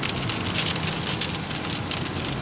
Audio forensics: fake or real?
real